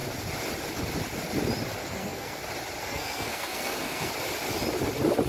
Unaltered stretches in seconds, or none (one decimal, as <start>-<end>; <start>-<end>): 0.0-1.8; 2.4-2.8; 4.1-5.3